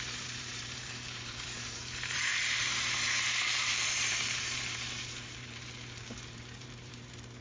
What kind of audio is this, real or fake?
fake